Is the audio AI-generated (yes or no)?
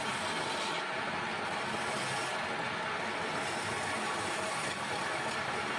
no